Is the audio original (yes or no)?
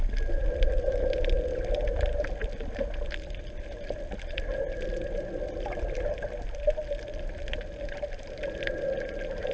yes